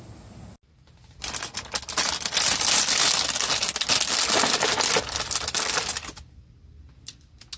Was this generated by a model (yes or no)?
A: no